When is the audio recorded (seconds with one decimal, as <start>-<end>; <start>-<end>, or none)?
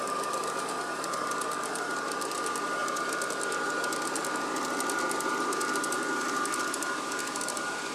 2.8-7.4